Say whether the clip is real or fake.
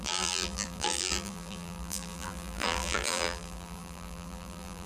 fake